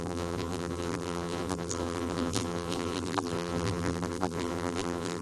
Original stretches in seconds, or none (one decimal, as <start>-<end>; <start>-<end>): none